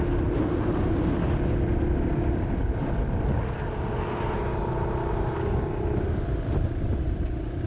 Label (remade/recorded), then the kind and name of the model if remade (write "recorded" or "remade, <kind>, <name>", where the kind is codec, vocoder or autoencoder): recorded